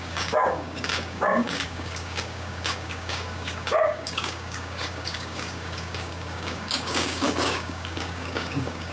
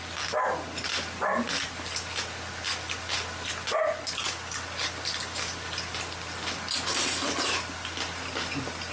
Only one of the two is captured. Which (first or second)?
second